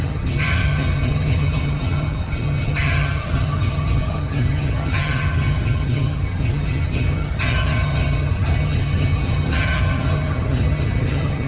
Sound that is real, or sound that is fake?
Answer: fake